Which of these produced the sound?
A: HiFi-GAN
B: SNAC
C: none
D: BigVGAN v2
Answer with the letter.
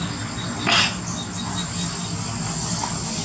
C